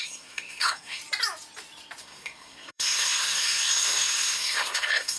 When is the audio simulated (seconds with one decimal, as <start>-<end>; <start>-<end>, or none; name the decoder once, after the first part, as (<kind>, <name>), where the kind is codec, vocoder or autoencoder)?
0.0-1.0 (codec, SNAC); 2.0-5.2